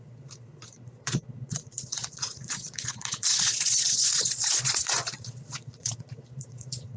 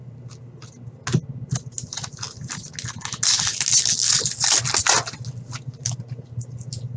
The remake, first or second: first